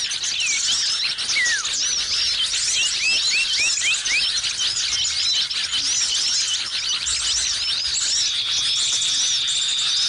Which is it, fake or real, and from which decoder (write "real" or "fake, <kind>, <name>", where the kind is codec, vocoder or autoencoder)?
real